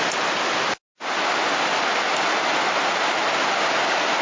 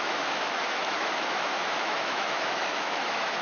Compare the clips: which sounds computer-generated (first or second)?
second